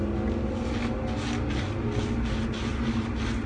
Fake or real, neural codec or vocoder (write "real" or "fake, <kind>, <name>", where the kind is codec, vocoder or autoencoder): real